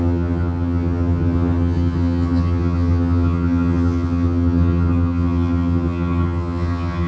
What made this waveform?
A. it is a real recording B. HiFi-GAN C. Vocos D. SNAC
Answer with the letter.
B